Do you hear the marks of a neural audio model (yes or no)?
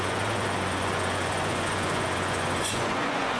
yes